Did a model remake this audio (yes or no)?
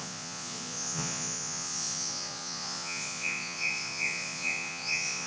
yes